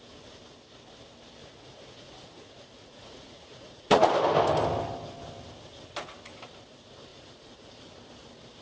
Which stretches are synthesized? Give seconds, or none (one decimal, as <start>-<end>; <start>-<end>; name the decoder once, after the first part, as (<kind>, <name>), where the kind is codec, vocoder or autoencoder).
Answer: 1.4-4.1 (vocoder, Vocos); 7.1-7.7